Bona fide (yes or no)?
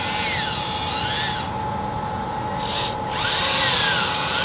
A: yes